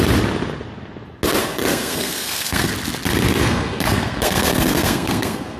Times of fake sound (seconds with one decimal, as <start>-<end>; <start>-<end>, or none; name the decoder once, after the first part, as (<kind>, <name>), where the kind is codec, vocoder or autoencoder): 1.4-2.7 (codec, SNAC); 3.4-5.6